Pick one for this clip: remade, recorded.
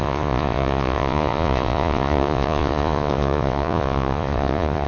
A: remade